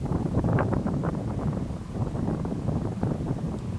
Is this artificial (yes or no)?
yes